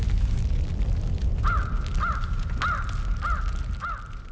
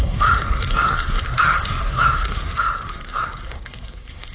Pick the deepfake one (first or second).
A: second